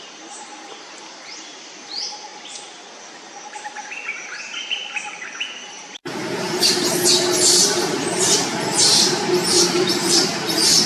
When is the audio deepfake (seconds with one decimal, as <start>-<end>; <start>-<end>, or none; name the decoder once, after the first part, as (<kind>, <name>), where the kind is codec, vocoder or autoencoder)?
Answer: 0.0-2.3 (vocoder, BigVGAN v2); 4.4-6.0; 8.9-10.9